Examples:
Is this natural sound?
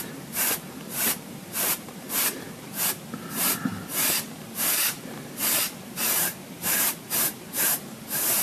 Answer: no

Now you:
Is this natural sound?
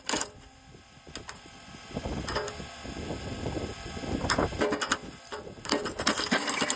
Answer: yes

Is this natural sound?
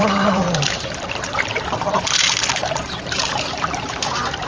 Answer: no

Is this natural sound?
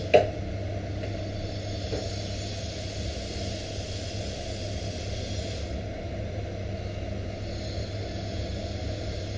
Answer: yes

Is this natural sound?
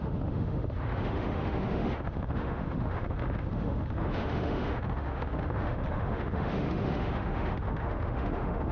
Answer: no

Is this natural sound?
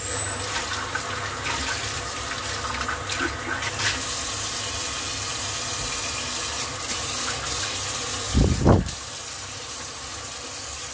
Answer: yes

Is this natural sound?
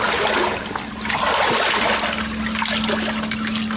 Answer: yes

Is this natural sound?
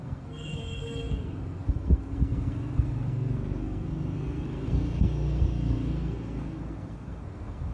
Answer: no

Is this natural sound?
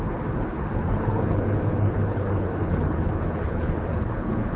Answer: no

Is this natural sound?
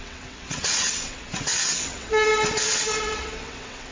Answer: no